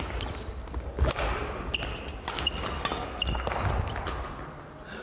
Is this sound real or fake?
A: real